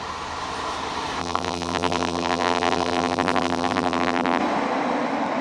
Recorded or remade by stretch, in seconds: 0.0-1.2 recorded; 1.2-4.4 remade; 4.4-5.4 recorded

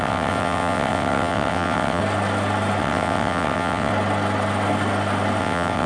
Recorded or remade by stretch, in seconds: 0.0-2.0 remade; 2.0-2.8 recorded; 2.8-3.9 remade; 3.9-5.4 recorded; 5.4-5.9 remade

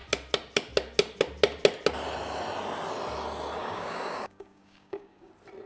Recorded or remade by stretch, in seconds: 0.0-3.6 recorded; 3.6-5.3 remade; 5.3-5.7 recorded

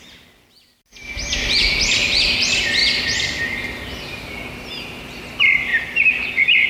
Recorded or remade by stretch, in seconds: 0.0-2.8 recorded; 2.8-3.4 remade; 3.4-6.7 recorded

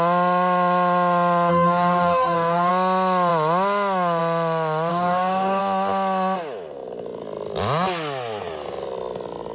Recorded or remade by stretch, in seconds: 0.0-1.5 recorded; 1.5-2.7 remade; 2.7-4.9 recorded; 4.9-5.6 remade; 5.6-9.5 recorded

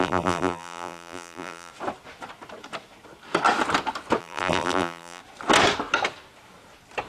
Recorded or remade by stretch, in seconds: 0.0-1.7 remade; 1.7-4.2 recorded; 4.2-5.2 remade; 5.2-7.1 recorded

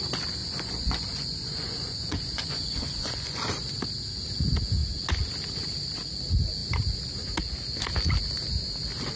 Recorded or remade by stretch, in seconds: 0.0-0.4 recorded; 0.4-3.5 remade; 3.5-9.2 recorded

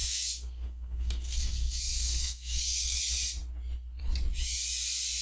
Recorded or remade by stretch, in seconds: 0.0-3.0 remade; 3.0-5.2 recorded